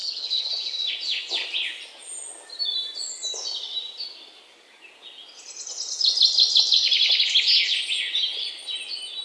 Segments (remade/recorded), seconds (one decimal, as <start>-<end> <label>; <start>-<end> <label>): 0.0-0.5 remade; 0.5-9.2 recorded